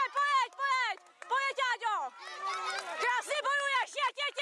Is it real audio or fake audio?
real